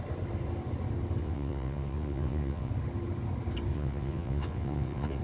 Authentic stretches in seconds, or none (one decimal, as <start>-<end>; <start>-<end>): 0.0-1.2; 2.7-3.7